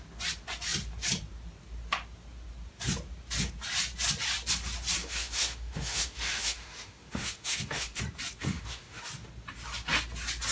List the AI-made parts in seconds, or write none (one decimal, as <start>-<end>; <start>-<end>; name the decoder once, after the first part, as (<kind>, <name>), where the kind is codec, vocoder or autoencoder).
5.0-8.0 (autoencoder, DAC-VAE); 8.4-9.1